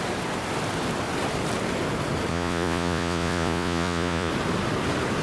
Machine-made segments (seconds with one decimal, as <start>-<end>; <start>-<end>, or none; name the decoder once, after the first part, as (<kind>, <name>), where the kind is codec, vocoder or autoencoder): 2.3-4.3 (vocoder, Vocos)